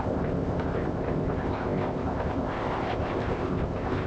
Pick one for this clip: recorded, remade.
remade